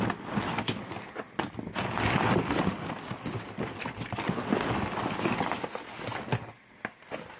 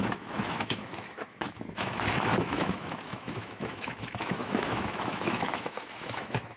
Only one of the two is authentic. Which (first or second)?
first